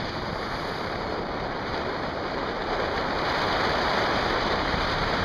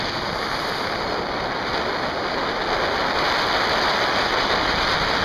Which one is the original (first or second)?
second